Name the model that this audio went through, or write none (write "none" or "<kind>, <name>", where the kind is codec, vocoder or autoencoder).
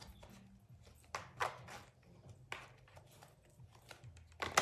none